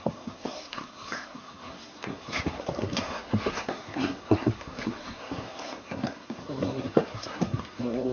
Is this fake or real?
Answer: fake